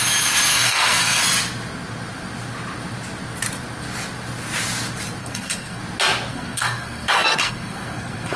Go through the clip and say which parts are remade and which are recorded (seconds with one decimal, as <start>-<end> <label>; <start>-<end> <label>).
0.0-0.5 recorded; 0.5-1.2 remade; 1.2-5.2 recorded; 5.2-5.8 remade; 5.8-6.3 recorded; 6.3-8.4 remade